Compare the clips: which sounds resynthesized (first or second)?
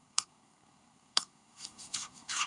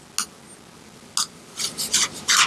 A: first